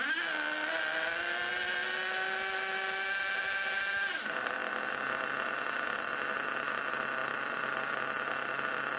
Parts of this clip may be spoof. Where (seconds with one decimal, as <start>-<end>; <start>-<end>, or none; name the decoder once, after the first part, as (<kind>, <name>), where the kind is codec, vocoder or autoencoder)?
none